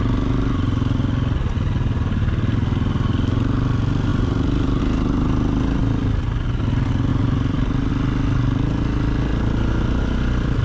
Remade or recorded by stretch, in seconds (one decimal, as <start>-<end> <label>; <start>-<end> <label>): 0.0-4.1 recorded; 4.1-4.8 remade; 4.8-7.1 recorded; 7.1-7.9 remade; 7.9-10.6 recorded